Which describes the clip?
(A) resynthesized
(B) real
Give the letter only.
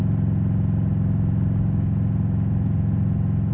B